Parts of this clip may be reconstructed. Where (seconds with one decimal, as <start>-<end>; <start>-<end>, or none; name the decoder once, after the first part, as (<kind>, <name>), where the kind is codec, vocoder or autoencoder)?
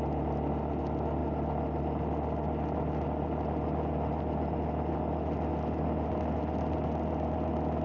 none